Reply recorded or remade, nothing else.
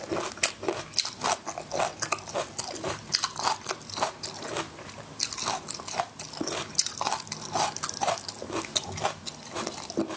recorded